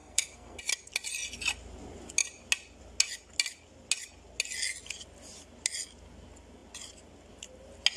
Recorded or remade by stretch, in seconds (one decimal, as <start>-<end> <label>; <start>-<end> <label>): 0.0-0.6 remade; 0.6-8.0 recorded